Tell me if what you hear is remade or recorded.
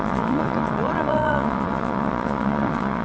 remade